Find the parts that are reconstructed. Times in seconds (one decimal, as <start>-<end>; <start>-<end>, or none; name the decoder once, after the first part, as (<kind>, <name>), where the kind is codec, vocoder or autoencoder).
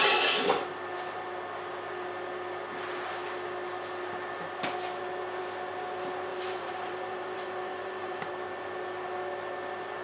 6.3-8.3 (vocoder, BigVGAN v2)